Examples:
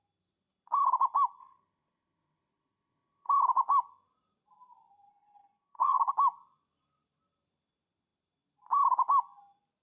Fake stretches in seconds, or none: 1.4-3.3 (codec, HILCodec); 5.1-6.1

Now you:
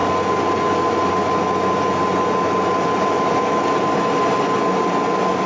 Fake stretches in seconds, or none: none

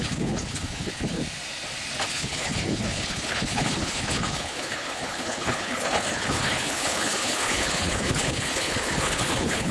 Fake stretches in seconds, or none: 0.0-1.2 (codec, HILCodec); 2.1-9.7

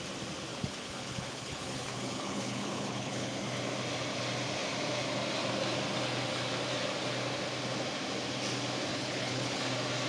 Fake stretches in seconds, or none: 0.5-3.4 (codec, HILCodec); 8.9-9.6

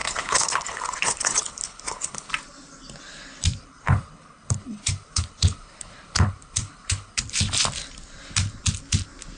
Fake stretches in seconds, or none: 0.0-2.3 (codec, HILCodec); 3.6-7.2

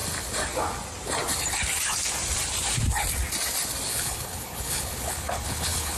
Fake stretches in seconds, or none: 3.9-6.0 (codec, HILCodec)